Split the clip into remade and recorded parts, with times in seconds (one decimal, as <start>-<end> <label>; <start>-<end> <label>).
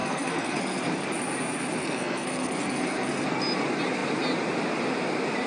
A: 0.0-0.9 remade; 0.9-1.8 recorded; 1.8-3.4 remade; 3.4-5.5 recorded